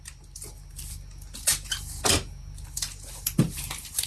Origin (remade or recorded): recorded